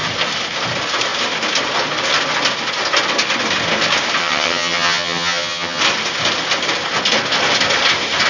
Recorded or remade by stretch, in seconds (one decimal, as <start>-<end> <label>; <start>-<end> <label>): 0.0-4.2 recorded; 4.2-5.8 remade; 5.8-8.3 recorded